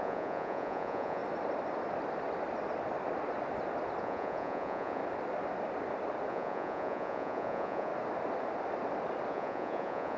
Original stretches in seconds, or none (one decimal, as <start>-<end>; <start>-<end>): 1.2-4.0; 5.0-6.3; 7.9-9.3

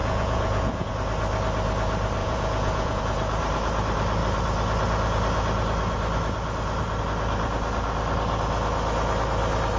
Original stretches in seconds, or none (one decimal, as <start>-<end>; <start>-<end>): 0.9-2.2; 3.0-9.8

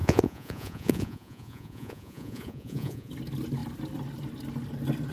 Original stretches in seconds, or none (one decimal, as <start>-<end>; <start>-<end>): 3.1-5.1

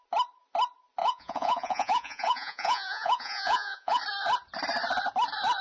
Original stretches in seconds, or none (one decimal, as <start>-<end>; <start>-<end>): 0.0-1.0; 4.0-5.6

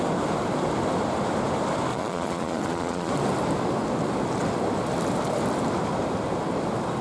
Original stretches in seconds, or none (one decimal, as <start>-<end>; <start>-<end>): 0.0-1.9; 3.1-7.0